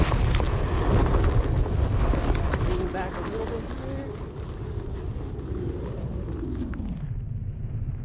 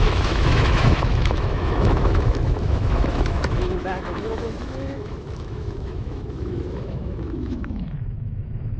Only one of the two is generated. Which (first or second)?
second